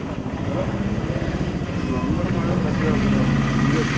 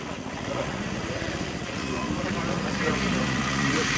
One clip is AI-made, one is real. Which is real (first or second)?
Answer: first